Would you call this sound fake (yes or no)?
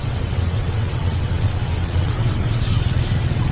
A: yes